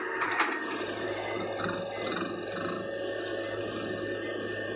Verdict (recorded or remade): recorded